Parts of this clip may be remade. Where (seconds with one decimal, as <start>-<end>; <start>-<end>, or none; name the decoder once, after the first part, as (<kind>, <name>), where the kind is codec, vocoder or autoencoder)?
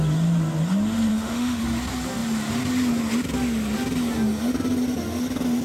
1.1-1.6 (autoencoder, DAC-VAE)